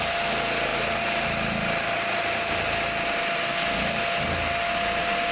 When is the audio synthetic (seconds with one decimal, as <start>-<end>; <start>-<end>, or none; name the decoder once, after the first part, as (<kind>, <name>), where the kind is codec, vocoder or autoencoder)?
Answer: none